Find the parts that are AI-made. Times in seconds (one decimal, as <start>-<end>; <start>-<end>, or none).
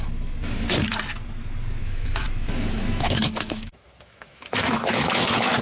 1.8-5.6